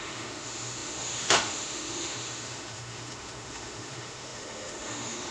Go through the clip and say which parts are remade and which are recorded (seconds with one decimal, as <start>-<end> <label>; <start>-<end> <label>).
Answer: 0.0-5.3 remade